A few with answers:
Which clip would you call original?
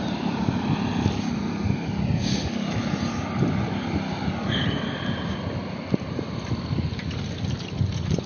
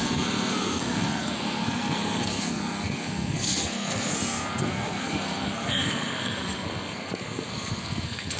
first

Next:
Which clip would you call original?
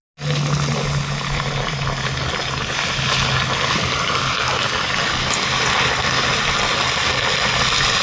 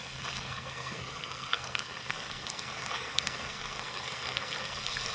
first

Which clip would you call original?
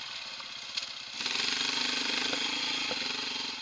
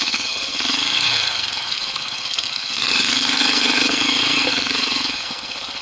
first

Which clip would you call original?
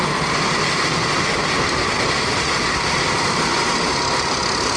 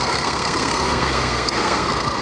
first